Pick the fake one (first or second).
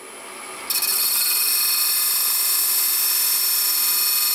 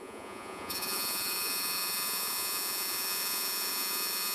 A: second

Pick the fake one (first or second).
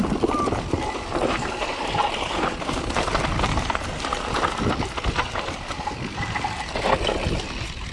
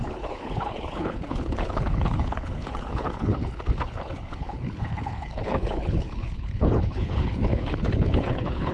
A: second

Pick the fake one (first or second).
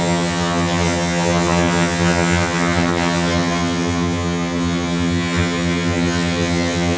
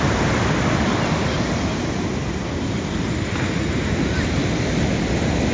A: first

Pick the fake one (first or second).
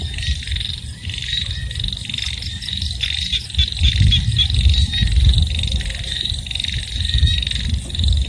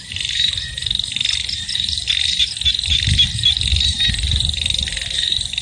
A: second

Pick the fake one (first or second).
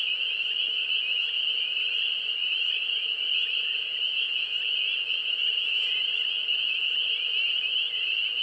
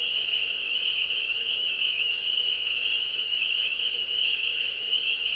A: second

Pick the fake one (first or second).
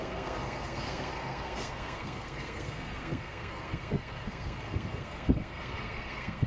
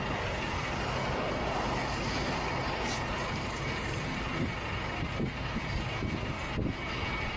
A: first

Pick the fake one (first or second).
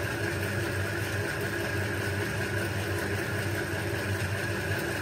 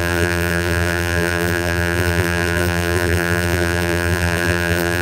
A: second